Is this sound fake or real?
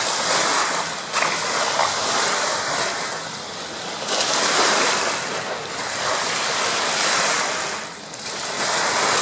real